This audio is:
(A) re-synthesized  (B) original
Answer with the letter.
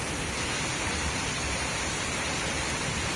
B